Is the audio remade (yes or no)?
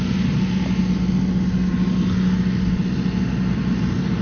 no